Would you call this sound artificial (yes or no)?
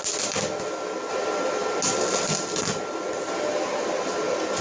no